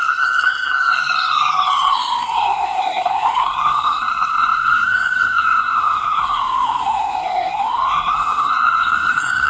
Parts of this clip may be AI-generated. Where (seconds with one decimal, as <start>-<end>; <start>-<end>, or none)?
0.0-9.5